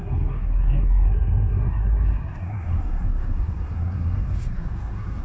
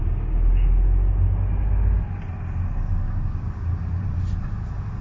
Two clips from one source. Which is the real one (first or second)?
second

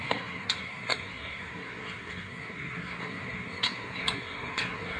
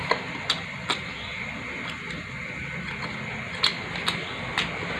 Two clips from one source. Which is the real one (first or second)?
second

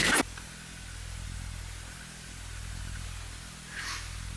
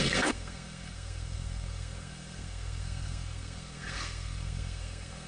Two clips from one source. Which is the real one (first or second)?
first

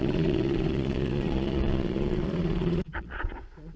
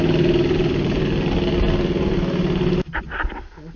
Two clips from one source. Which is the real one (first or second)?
second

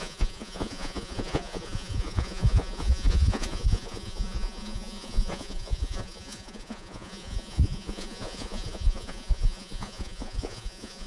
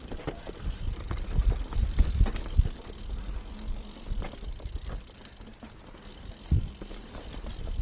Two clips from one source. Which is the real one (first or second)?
second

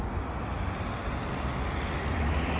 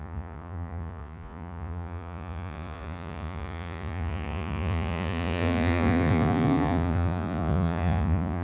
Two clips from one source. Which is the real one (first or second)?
first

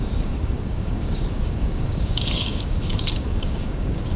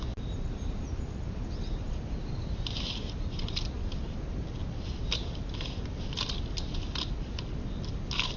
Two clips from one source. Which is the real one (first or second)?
second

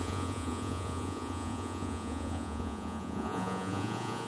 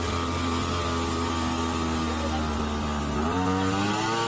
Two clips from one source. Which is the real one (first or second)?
second